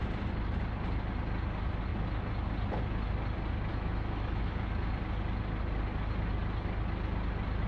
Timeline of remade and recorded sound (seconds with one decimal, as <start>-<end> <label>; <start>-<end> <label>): 0.0-3.7 recorded; 3.7-4.9 remade; 4.9-7.7 recorded